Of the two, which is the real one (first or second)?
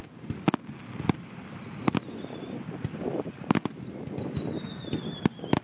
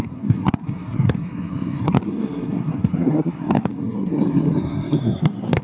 first